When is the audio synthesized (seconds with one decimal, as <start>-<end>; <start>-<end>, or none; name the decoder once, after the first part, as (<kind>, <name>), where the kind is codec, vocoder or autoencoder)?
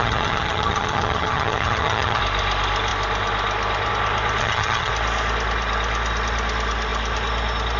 0.0-2.2 (vocoder, HiFi-GAN); 4.4-4.9